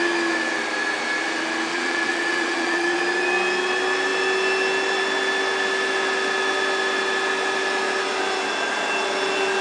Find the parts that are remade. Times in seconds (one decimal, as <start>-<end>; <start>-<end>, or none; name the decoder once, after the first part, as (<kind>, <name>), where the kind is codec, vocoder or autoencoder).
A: 1.7-3.0 (vocoder, Vocos)